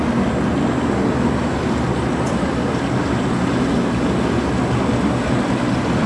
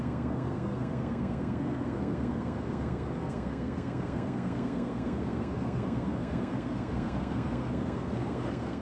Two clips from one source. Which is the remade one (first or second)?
second